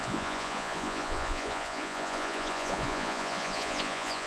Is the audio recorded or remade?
remade